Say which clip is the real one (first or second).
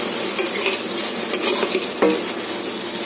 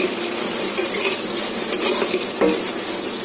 first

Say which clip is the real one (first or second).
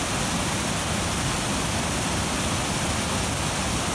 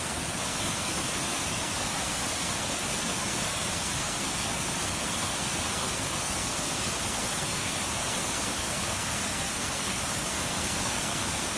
first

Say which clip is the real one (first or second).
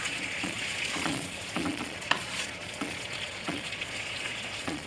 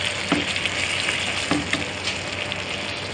second